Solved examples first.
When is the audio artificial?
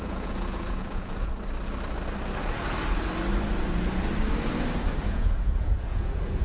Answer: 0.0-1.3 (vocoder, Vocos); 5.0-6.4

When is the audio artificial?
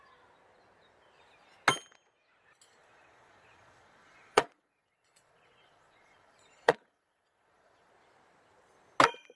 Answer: 2.8-7.9 (vocoder, Vocos)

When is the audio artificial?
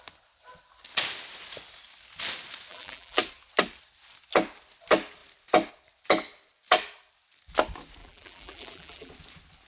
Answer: 2.7-3.2 (vocoder, BigVGAN v2); 8.0-9.1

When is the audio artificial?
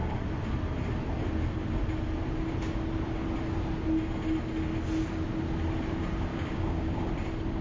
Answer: 6.3-7.0 (codec, DAC)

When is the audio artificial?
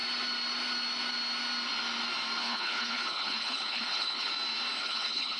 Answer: 2.4-4.3 (codec, HILCodec); 4.8-5.4